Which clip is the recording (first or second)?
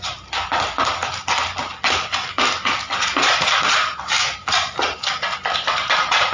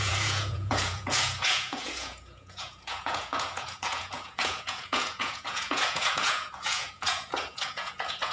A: first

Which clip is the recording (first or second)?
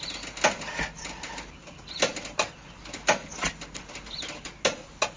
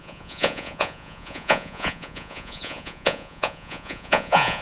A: first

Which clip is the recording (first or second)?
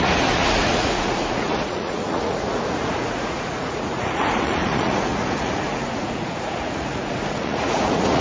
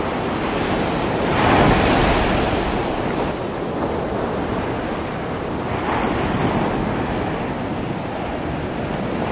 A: second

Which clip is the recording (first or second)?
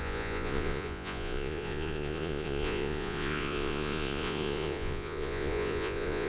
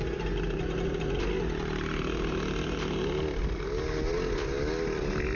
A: second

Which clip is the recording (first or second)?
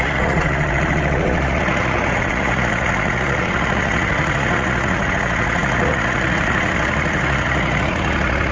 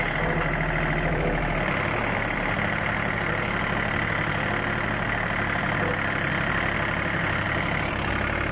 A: second